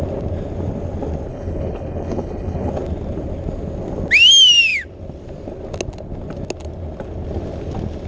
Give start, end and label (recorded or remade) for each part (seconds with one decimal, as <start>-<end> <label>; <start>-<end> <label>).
0.0-1.3 recorded; 1.3-2.7 remade; 2.7-8.1 recorded